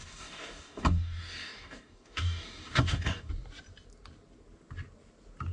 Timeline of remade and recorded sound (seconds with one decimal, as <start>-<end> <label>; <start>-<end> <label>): 0.0-3.3 remade; 3.3-5.5 recorded